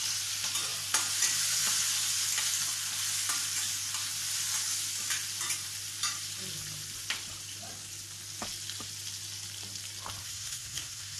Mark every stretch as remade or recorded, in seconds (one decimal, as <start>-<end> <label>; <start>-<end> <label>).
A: 0.0-10.2 recorded; 10.2-11.2 remade